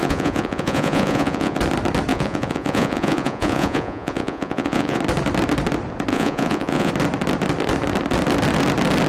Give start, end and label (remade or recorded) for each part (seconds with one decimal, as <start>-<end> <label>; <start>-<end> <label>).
0.0-1.6 remade; 1.6-2.1 recorded; 2.1-5.0 remade; 5.0-6.1 recorded; 6.1-6.9 remade; 6.9-9.1 recorded